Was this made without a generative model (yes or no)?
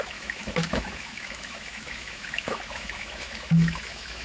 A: no